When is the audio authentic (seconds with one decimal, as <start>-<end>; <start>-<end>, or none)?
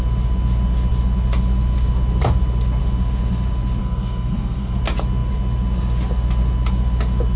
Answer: 0.0-3.8; 4.8-7.4